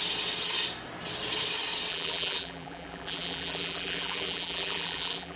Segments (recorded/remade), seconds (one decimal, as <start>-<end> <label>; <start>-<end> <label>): 0.0-1.9 recorded; 1.9-5.4 remade